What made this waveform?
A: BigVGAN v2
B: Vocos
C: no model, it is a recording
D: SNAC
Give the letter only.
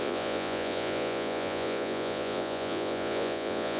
B